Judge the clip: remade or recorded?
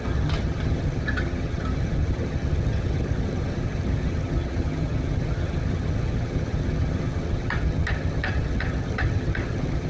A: remade